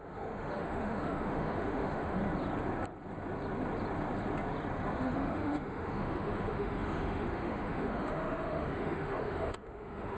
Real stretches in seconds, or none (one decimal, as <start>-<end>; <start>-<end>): 2.2-4.9